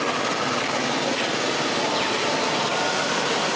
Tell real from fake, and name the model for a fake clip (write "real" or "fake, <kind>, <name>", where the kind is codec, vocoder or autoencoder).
real